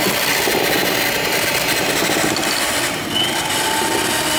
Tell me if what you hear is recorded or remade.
recorded